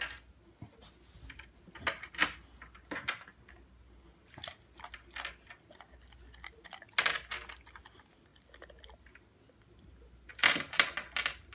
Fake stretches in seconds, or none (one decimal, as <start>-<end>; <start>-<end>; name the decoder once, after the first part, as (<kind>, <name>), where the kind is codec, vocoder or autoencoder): none